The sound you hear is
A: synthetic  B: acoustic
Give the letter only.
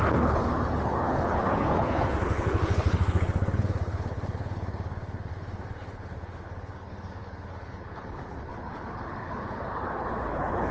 A